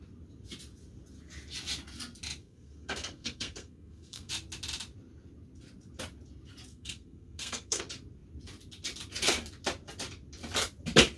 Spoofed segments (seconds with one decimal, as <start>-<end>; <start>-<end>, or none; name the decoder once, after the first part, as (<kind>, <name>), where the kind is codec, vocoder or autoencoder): 2.4-4.3 (codec, SNAC); 6.7-7.8